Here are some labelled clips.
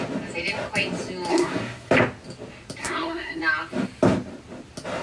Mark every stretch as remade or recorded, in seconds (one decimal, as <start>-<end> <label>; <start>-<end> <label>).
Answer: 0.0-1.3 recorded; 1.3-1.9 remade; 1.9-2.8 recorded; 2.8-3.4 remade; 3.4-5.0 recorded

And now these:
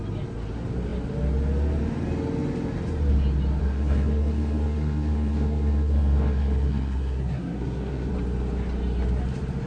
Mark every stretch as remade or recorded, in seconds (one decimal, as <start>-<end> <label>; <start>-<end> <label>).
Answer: 0.0-3.6 recorded; 3.6-8.1 remade; 8.1-9.7 recorded

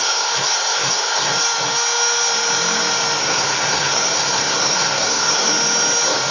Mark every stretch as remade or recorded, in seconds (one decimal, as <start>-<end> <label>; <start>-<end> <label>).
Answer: 0.0-1.3 remade; 1.3-3.2 recorded; 3.2-5.5 remade; 5.5-6.3 recorded